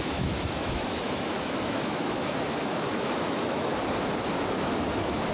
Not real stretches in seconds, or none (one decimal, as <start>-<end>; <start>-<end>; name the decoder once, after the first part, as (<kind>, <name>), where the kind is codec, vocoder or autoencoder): 0.0-3.7 (autoencoder, DAC-VAE); 4.5-5.3

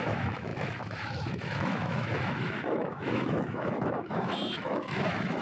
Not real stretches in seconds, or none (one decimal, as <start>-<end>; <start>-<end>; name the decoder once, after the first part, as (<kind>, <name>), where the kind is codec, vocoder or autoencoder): 0.0-5.4 (autoencoder, DAC-VAE)

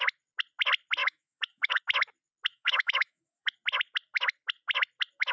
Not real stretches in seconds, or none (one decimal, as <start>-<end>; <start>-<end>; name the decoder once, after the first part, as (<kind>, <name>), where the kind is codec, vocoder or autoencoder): 1.0-1.8 (autoencoder, DAC-VAE); 2.5-3.5

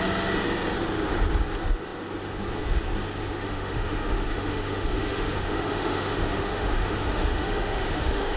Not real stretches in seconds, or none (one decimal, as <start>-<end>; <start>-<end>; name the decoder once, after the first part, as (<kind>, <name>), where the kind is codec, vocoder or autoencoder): 3.4-8.4 (autoencoder, DAC-VAE)

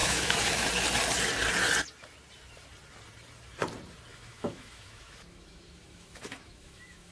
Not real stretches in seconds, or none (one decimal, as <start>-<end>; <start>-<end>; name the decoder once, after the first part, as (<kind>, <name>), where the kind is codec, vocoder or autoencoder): 0.0-0.7 (autoencoder, DAC-VAE); 4.1-7.1

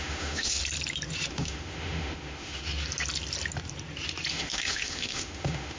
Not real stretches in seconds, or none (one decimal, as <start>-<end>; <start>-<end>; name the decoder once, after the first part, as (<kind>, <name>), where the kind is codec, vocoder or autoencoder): 0.0-0.6 (autoencoder, DAC-VAE); 1.3-2.6; 4.3-5.8

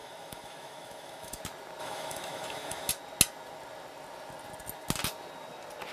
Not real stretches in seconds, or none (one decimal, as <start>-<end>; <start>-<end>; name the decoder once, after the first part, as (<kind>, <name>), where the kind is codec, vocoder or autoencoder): 0.0-1.4 (autoencoder, DAC-VAE); 1.8-2.9